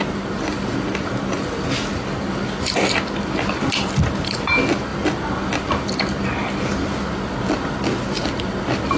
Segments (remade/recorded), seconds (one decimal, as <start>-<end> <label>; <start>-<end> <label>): 0.0-9.0 recorded

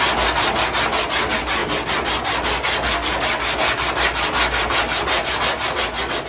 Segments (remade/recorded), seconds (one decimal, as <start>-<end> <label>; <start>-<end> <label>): 0.0-6.3 recorded